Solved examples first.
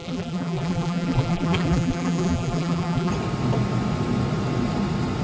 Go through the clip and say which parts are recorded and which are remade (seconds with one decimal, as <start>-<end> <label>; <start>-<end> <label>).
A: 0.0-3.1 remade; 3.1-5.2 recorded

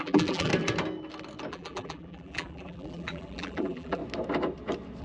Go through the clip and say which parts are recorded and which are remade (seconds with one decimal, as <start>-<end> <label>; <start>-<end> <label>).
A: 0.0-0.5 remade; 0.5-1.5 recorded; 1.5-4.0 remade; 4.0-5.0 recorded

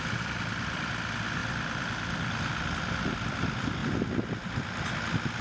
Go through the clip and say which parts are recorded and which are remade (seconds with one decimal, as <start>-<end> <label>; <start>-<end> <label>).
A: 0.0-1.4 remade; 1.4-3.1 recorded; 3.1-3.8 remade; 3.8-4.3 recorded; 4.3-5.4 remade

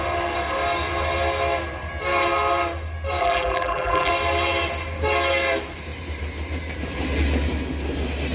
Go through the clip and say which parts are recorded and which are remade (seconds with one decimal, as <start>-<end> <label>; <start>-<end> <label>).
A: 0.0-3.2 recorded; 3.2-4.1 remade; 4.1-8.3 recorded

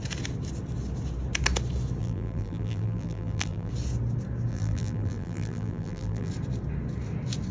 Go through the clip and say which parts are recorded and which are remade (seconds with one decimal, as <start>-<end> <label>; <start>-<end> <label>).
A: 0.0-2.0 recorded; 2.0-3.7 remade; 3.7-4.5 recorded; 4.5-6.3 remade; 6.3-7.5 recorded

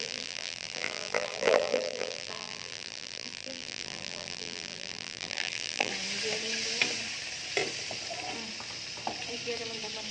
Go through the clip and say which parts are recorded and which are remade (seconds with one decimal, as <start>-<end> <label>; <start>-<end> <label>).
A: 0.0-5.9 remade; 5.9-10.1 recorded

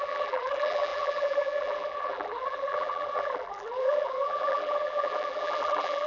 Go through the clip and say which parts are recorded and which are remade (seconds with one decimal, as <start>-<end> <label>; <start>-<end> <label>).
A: 0.0-6.1 remade

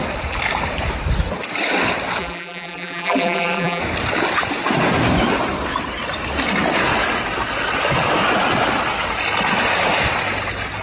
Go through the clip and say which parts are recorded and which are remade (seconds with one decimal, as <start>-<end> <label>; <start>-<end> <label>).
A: 0.0-2.2 recorded; 2.2-3.8 remade; 3.8-10.8 recorded